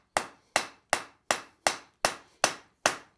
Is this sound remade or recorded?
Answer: recorded